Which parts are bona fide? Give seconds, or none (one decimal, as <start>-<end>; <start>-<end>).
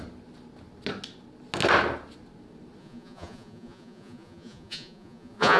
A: 0.0-2.8